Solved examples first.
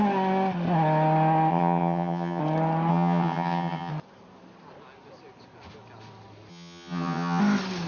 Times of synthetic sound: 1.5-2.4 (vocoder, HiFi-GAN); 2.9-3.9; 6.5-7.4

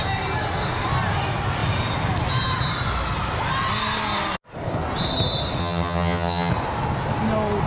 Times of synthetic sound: 5.6-6.5 (vocoder, HiFi-GAN)

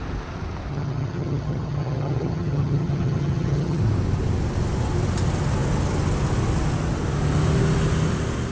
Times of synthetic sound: 0.7-3.8 (vocoder, HiFi-GAN)